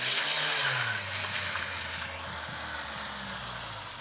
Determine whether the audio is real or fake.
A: real